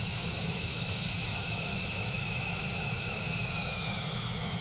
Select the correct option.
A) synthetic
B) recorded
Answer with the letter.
A